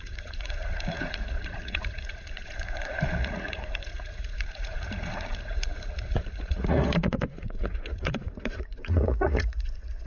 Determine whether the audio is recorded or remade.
remade